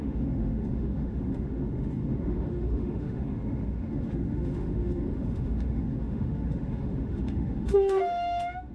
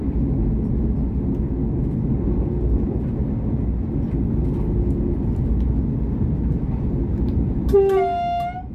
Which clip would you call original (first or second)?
second